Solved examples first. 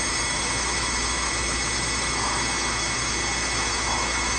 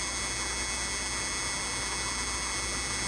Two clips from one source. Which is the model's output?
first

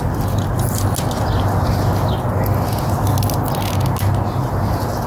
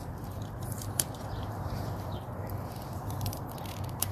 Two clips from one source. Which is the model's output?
second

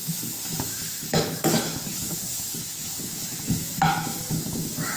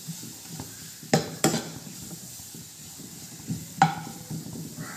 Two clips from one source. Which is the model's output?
first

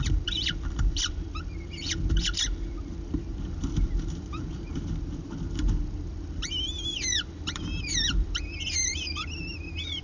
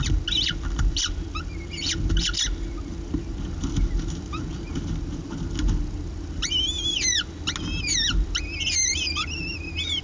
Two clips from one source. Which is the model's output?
first